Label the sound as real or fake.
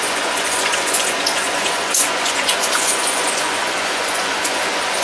fake